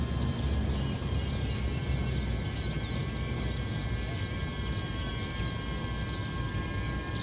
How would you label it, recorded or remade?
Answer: recorded